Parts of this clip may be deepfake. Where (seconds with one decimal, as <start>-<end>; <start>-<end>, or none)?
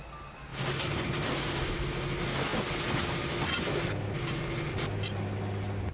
0.5-1.7